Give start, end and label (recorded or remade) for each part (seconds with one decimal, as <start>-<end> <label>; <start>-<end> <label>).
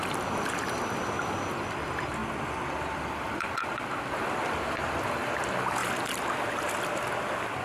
0.0-2.2 remade; 2.2-2.7 recorded; 2.7-5.8 remade; 5.8-7.6 recorded